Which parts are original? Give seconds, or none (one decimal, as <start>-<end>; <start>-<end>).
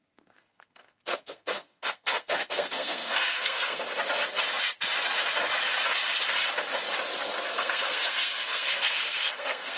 3.8-7.5